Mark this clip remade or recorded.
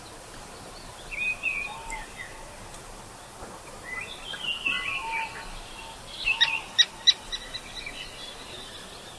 recorded